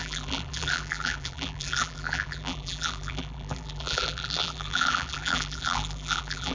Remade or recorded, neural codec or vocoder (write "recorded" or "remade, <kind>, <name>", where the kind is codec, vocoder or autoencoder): remade, vocoder, BigVGAN v2